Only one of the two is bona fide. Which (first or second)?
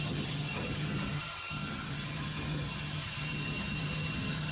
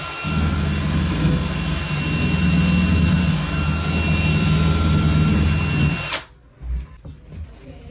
second